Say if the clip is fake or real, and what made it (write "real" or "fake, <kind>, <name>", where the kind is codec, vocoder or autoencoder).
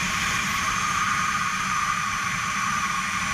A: fake, vocoder, BigVGAN v2